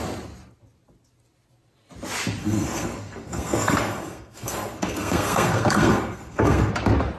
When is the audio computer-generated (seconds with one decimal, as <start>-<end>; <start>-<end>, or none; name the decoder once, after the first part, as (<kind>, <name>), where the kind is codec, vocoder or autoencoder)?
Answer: 2.4-6.7 (codec, SNAC)